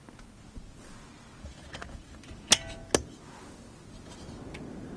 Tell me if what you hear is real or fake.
real